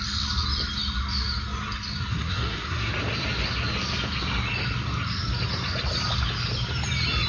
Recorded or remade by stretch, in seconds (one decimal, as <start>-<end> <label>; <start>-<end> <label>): 0.0-2.1 recorded; 2.1-2.9 remade; 2.9-7.3 recorded